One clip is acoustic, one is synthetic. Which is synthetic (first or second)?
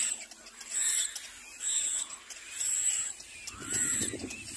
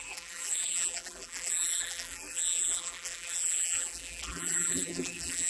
second